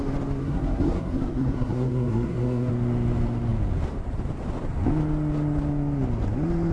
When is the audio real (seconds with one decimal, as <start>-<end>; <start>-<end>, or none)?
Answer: 0.0-0.4; 2.7-6.7